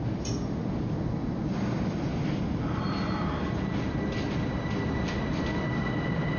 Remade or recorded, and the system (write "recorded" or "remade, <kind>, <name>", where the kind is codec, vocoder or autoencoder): recorded